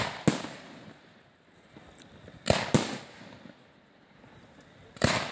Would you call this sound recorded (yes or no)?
yes